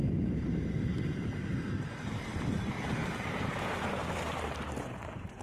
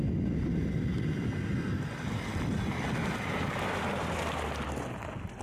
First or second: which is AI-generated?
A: first